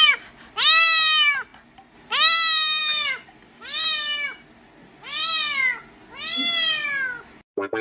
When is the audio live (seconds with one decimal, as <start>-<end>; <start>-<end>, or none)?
0.0-7.8